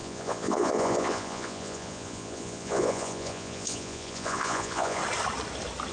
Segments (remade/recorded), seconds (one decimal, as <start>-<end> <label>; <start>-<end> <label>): 0.0-5.0 remade; 5.0-5.9 recorded